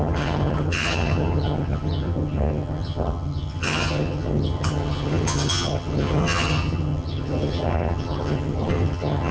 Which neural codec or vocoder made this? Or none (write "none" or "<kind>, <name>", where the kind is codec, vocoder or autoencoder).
vocoder, HiFi-GAN